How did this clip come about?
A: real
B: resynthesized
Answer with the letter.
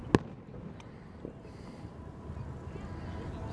A